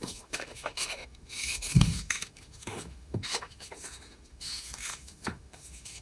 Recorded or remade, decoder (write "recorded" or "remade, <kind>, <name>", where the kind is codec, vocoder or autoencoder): remade, autoencoder, DAC-VAE